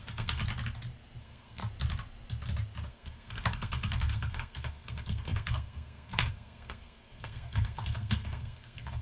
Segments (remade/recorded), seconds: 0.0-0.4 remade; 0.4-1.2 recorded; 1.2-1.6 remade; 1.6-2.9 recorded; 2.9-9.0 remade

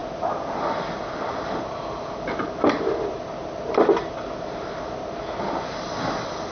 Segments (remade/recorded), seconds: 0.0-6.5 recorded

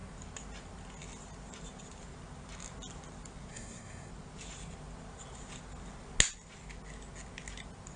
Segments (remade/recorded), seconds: 0.0-3.5 recorded; 3.5-4.1 remade; 4.1-8.0 recorded

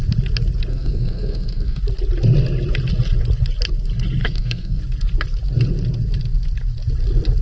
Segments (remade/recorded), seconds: 0.0-0.7 recorded; 0.7-1.8 remade; 1.8-4.2 recorded; 4.2-4.8 remade; 4.8-7.4 recorded

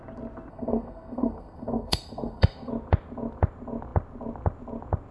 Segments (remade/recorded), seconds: 0.0-0.5 recorded; 0.5-2.7 remade; 2.7-5.1 recorded